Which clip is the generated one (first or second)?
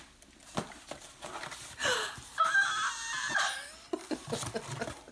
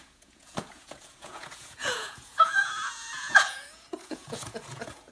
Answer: second